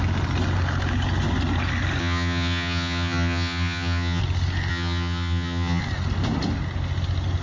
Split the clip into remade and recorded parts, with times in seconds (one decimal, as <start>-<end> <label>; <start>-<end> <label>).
0.0-2.0 recorded; 2.0-4.2 remade; 4.2-4.7 recorded; 4.7-5.8 remade; 5.8-7.4 recorded